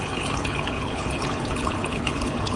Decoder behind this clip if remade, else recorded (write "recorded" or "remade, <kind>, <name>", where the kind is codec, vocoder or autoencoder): remade, codec, HILCodec